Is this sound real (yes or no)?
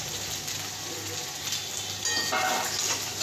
yes